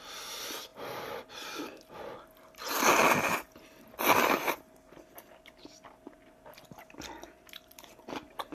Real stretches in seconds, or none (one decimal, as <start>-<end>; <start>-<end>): 0.0-8.5